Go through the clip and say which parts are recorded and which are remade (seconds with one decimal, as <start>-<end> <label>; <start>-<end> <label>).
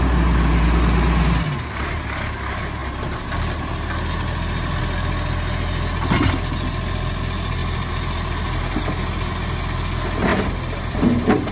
0.0-7.6 recorded; 7.6-8.6 remade; 8.6-10.3 recorded; 10.3-11.5 remade